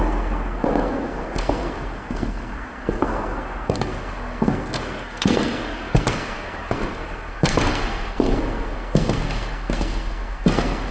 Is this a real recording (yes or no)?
no